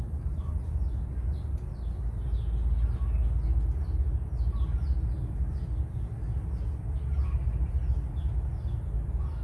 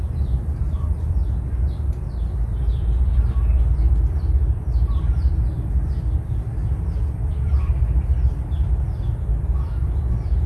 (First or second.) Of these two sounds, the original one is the first